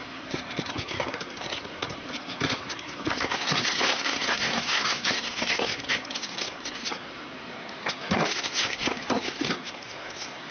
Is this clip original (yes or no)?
no